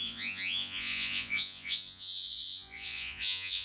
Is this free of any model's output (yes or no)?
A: no